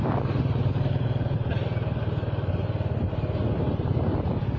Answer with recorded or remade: recorded